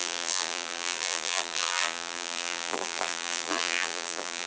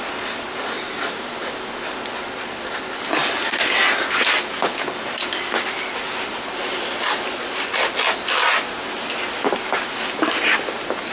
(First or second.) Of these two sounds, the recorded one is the second